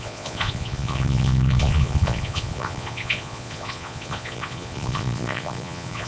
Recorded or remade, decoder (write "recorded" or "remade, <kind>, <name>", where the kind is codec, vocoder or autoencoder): remade, vocoder, Vocos